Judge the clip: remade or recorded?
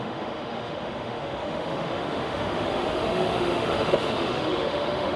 remade